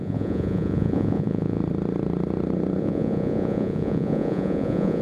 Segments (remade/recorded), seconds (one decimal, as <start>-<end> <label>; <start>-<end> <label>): 0.0-1.6 remade; 1.6-2.8 recorded; 2.8-5.0 remade